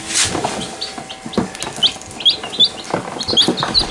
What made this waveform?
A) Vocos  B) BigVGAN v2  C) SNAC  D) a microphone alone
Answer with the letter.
D